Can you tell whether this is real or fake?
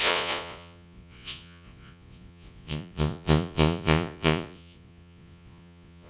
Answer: fake